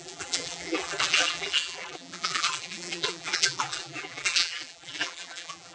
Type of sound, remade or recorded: remade